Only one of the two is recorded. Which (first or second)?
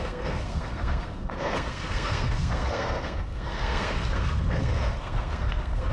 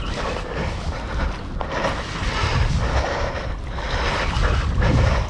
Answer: second